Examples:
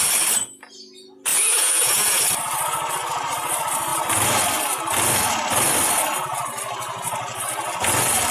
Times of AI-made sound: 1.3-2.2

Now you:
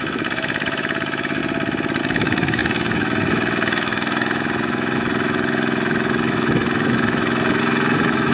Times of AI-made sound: 0.0-1.4; 2.0-8.3

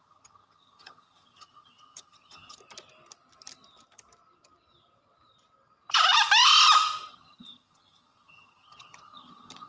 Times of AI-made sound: 0.0-2.6; 7.1-9.7

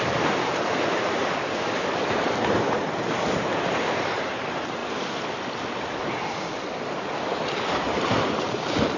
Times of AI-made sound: 0.0-1.2; 2.4-4.8; 7.7-9.0

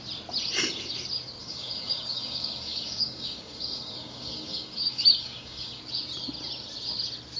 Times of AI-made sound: 1.4-5.8

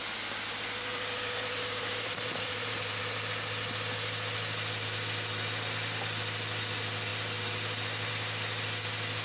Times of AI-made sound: 0.9-3.0